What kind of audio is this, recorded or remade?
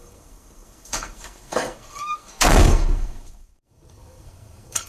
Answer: remade